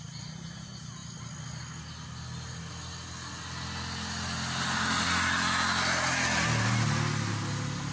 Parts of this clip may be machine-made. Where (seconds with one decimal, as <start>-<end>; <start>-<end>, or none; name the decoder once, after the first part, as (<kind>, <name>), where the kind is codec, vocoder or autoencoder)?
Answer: none